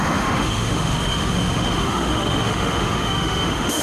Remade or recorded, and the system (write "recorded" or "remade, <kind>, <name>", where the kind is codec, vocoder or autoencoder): remade, autoencoder, DAC-VAE